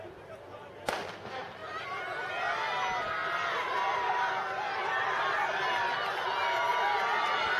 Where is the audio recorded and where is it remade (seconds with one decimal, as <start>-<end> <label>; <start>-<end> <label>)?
0.0-3.2 recorded; 3.2-4.3 remade; 4.3-4.8 recorded; 4.8-5.8 remade; 5.8-7.6 recorded